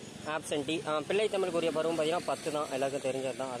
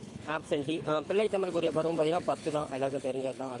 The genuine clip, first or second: first